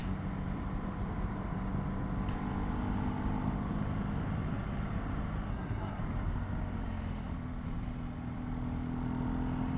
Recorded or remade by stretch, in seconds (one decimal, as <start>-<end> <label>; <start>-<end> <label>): 0.0-5.5 recorded; 5.5-6.0 remade; 6.0-9.8 recorded